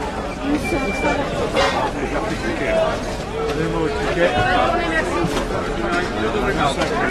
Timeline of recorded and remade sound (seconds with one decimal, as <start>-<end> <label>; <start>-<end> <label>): 0.0-0.6 recorded; 0.6-2.5 remade; 2.5-7.1 recorded